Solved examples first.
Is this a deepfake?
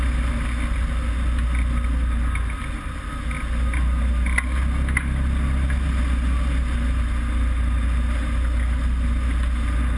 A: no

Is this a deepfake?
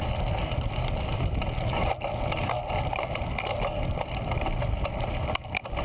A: no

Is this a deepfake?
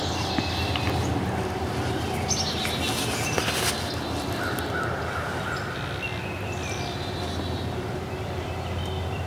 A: no